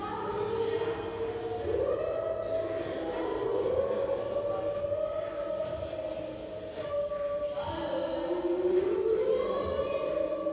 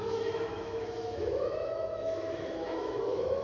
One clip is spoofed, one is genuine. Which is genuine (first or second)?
first